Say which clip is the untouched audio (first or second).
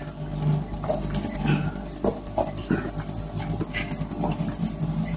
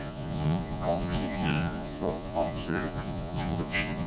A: first